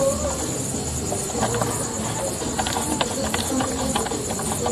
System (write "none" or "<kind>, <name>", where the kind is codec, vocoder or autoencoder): none